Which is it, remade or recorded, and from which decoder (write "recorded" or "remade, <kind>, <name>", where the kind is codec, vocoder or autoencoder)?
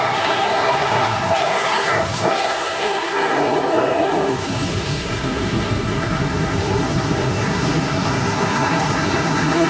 remade, codec, SNAC